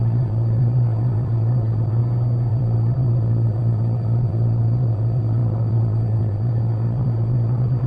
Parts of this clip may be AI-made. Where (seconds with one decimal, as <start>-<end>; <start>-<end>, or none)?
0.0-2.0; 2.5-7.9